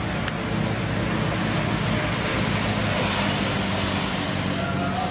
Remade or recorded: recorded